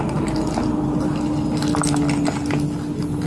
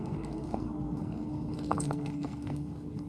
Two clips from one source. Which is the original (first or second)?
first